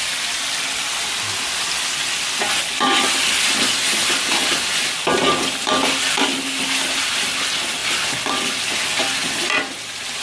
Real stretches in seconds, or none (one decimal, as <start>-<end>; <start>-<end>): 0.0-10.2